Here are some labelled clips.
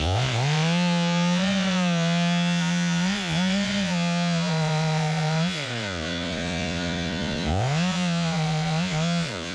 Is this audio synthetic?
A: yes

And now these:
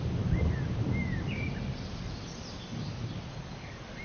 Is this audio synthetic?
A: no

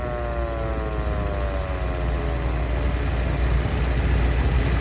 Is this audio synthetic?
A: no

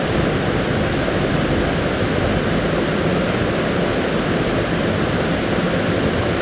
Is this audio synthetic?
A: no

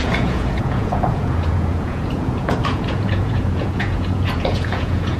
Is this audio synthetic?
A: yes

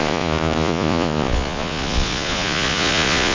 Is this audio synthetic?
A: yes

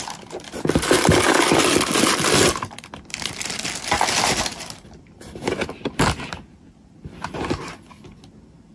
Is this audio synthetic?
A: no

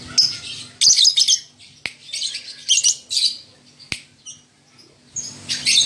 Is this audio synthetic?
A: no